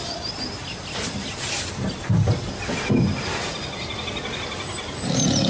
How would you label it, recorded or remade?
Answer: recorded